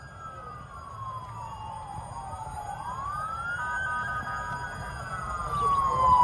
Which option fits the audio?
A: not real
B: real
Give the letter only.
B